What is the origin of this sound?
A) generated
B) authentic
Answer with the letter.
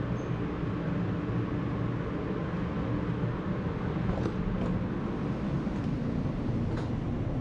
B